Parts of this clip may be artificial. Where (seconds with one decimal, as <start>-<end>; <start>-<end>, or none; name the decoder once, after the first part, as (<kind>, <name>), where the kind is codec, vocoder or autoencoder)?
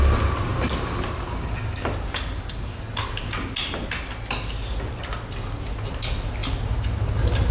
none